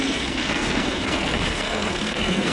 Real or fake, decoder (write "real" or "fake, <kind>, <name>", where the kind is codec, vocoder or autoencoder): fake, codec, SNAC